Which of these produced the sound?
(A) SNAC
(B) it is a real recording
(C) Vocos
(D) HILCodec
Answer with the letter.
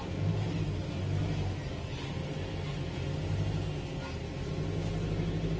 B